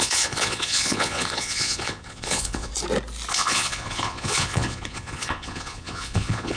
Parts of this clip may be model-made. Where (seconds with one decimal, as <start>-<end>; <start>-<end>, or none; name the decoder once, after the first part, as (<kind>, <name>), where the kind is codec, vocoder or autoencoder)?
0.0-2.7 (vocoder, Vocos); 3.3-6.6